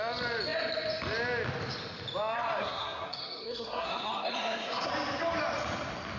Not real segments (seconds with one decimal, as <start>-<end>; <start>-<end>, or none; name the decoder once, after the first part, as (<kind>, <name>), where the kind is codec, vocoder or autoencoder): 2.6-4.9 (codec, SNAC)